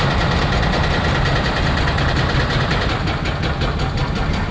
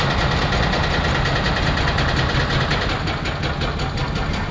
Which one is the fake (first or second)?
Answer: first